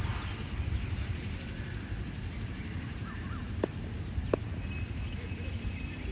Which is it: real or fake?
real